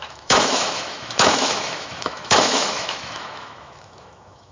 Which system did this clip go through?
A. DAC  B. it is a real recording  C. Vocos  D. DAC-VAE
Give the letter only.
D